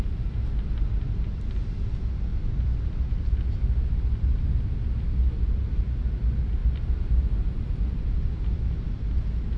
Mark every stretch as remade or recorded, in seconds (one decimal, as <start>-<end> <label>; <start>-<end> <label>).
0.0-2.3 recorded; 2.3-4.6 remade; 4.6-6.6 recorded; 6.6-9.0 remade; 9.0-9.6 recorded